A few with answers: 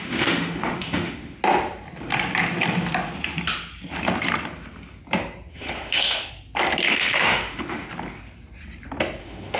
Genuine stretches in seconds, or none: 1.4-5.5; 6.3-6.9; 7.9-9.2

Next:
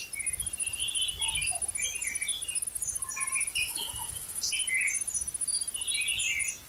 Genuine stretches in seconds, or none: 0.0-3.5; 4.5-6.7

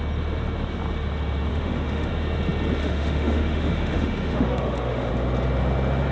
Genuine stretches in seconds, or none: 0.0-1.5; 2.1-2.8; 5.1-6.1

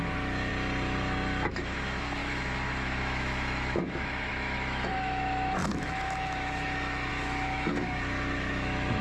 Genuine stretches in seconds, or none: 0.5-1.5

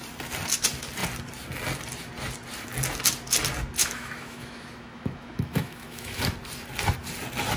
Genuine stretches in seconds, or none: 0.0-3.8; 6.2-7.6